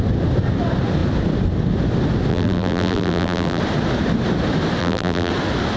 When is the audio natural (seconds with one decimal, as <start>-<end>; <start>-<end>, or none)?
0.0-2.3; 3.6-4.8; 5.3-5.8